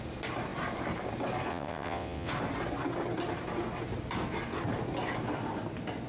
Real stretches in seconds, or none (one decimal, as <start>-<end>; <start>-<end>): 0.0-1.5; 2.3-6.1